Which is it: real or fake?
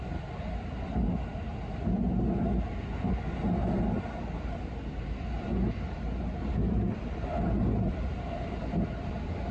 real